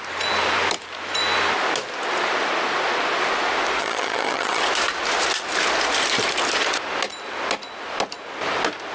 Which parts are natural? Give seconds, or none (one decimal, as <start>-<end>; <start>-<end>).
0.0-3.8; 4.6-8.9